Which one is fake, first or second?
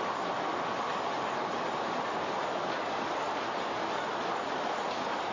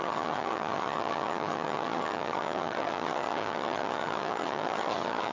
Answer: second